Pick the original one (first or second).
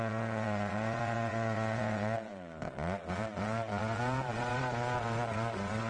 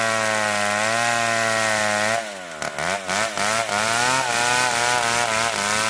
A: second